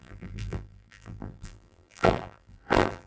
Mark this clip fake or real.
fake